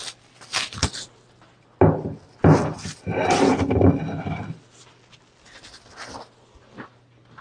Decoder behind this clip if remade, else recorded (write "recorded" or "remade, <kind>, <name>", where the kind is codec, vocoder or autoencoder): recorded